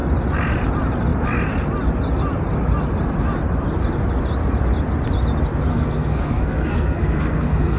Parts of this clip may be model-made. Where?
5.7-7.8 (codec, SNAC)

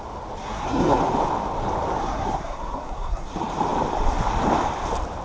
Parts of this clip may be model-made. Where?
0.4-1.0 (codec, SNAC); 2.0-3.3